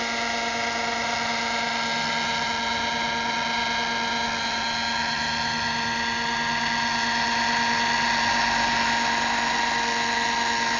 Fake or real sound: real